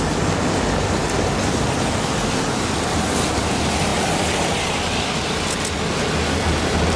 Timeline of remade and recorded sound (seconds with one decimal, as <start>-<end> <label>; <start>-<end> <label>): 0.0-7.0 recorded

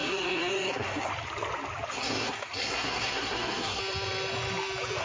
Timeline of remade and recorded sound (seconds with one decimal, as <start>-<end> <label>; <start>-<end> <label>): 0.0-1.1 remade; 1.1-1.9 recorded; 1.9-3.8 remade; 3.8-5.0 recorded

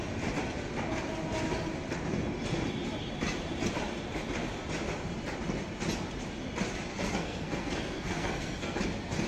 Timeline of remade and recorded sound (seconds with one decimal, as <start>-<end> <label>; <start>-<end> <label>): 0.0-6.9 recorded; 6.9-8.8 remade; 8.8-9.3 recorded

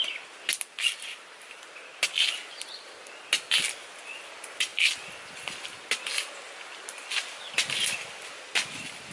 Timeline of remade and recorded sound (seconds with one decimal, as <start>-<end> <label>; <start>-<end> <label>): 0.0-9.1 recorded

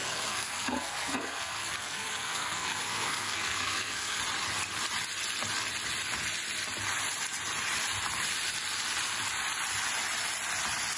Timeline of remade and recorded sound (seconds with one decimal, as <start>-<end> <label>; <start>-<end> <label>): 0.0-4.2 remade; 4.2-11.0 recorded

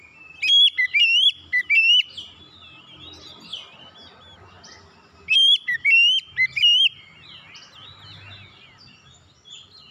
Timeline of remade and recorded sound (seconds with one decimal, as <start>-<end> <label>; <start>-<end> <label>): 0.0-9.9 recorded